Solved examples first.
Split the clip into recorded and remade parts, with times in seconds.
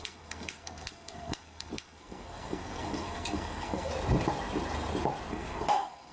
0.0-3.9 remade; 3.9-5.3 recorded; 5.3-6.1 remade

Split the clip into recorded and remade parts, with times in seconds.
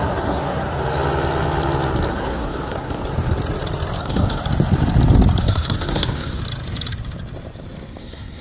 0.0-0.8 remade; 0.8-2.1 recorded; 2.1-3.0 remade; 3.0-4.0 recorded; 4.0-4.4 remade; 4.4-5.4 recorded; 5.4-6.4 remade; 6.4-8.0 recorded; 8.0-8.4 remade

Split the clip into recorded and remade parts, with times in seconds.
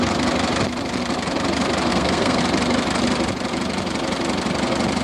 0.0-1.9 recorded; 1.9-2.4 remade; 2.4-5.0 recorded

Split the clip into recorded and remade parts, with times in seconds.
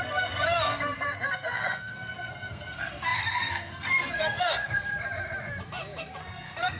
0.0-4.9 remade; 4.9-6.2 recorded; 6.2-6.8 remade